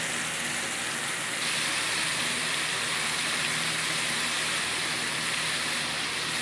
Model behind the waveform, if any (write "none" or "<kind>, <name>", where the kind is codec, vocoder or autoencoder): none